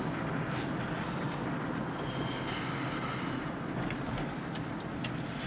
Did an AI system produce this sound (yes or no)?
no